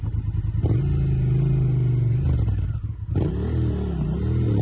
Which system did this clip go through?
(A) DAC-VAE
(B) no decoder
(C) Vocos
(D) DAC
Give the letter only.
B